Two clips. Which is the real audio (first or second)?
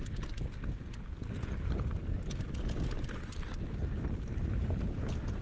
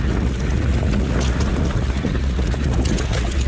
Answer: first